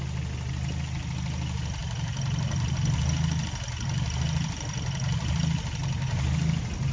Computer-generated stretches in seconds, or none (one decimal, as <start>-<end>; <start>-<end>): none